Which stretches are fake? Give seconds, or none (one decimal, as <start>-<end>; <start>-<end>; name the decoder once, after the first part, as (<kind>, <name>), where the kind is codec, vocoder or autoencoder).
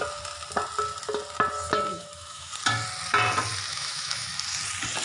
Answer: 1.9-2.5 (autoencoder, DAC-VAE); 3.7-4.3